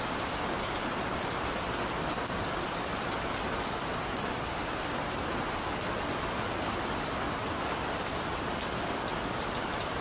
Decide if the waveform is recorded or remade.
recorded